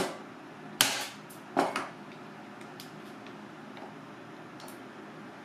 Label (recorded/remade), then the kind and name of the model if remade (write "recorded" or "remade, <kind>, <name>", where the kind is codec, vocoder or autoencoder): recorded